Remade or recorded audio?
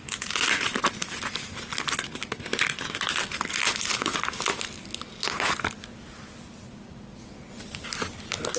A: recorded